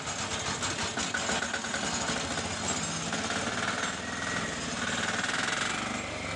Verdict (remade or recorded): recorded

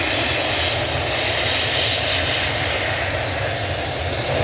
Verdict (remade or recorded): recorded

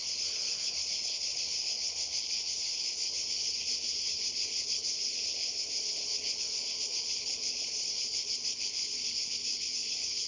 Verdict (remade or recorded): remade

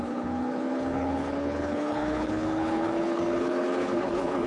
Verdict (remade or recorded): remade